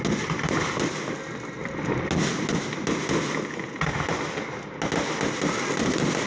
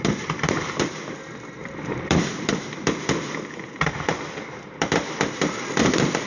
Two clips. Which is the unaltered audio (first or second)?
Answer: first